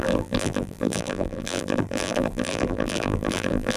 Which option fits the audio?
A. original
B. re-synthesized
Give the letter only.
B